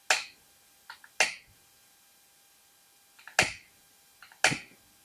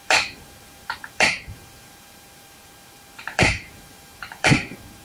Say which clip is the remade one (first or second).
second